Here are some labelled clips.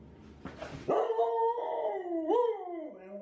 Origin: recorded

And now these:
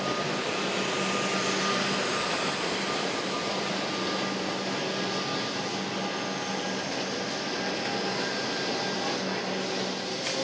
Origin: recorded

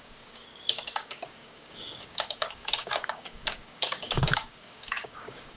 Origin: remade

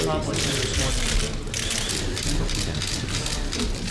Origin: recorded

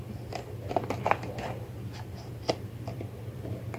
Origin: remade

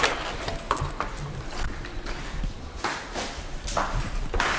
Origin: recorded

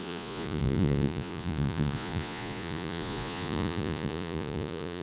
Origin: remade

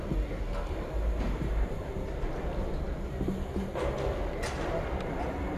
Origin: recorded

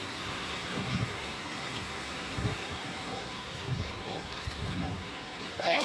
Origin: remade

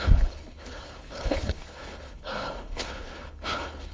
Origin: remade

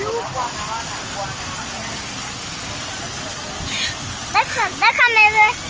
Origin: recorded